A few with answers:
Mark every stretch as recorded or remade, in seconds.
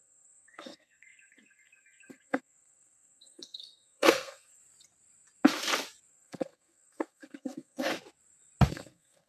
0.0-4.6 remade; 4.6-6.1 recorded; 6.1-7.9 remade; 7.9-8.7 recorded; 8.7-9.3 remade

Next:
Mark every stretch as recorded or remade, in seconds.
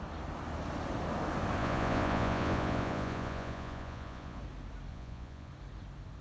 0.0-1.6 recorded; 1.6-4.4 remade; 4.4-4.9 recorded; 4.9-5.5 remade; 5.5-6.2 recorded